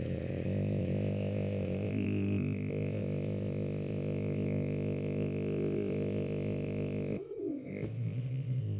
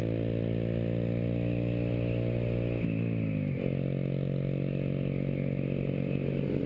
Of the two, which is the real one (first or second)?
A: second